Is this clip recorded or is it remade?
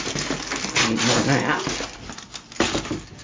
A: recorded